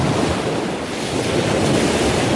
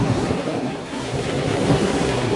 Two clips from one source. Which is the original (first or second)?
first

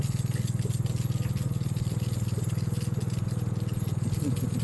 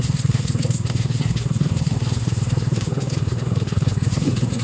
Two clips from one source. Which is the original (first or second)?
first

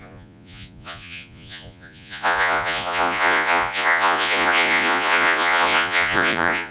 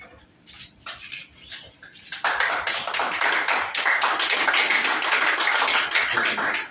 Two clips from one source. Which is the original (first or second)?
second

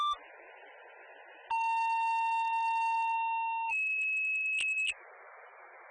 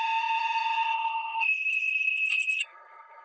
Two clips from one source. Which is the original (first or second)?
first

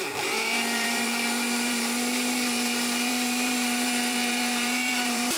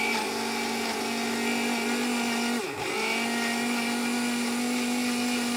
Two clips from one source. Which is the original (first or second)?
second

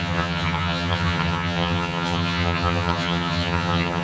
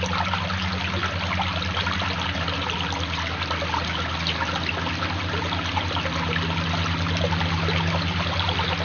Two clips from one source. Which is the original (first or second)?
second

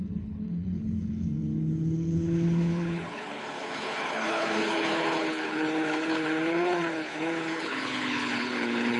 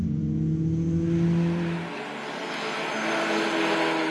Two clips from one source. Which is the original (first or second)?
second